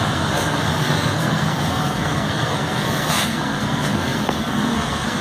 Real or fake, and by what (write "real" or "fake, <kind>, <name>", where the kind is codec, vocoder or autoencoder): fake, codec, SNAC